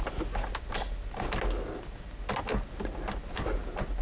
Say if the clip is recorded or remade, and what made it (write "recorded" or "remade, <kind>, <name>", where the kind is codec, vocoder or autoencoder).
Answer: recorded